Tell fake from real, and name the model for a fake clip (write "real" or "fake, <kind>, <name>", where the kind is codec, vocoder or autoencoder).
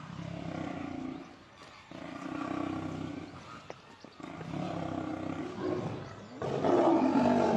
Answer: real